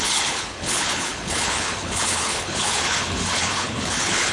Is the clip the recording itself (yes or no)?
no